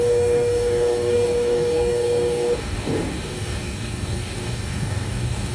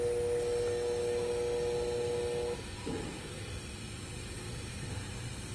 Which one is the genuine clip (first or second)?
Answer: second